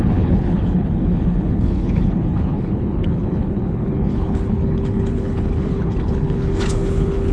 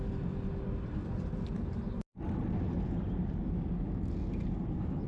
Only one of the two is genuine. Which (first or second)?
second